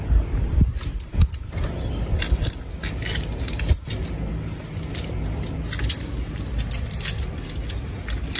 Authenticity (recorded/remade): recorded